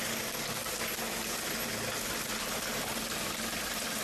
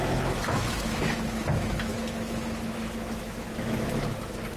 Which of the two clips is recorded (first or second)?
first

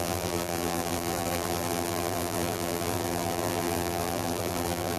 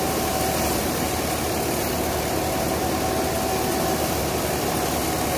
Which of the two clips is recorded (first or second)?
second